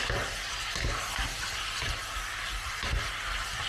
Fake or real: real